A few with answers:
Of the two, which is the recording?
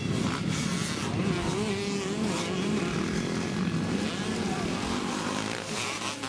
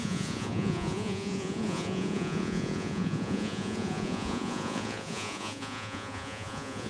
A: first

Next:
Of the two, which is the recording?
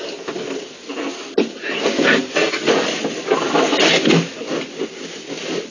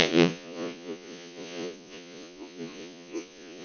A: first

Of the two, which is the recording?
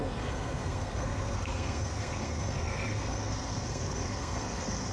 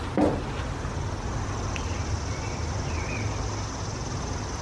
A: second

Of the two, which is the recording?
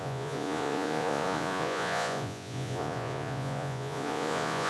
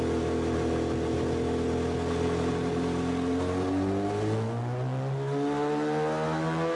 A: second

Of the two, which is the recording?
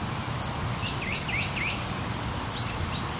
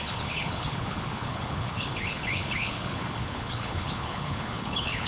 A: first